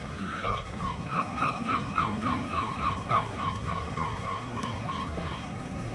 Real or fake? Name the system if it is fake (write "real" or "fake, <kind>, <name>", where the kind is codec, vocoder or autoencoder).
fake, codec, SNAC